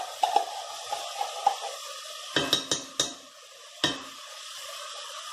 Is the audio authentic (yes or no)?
yes